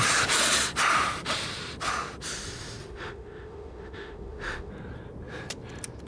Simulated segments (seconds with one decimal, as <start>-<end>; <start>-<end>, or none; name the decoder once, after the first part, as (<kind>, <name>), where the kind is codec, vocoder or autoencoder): 2.8-4.7 (autoencoder, DAC-VAE)